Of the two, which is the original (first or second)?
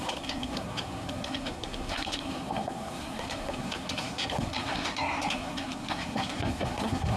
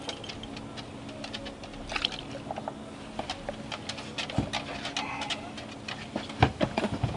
second